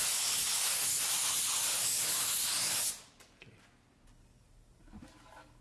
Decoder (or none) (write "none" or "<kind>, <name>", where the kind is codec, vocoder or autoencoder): none